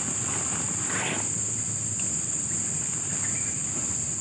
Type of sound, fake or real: real